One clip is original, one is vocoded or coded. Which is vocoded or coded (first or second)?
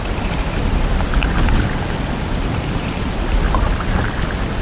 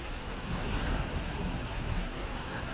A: second